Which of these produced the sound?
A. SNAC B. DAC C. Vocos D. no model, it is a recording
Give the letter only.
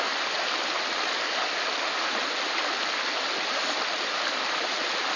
D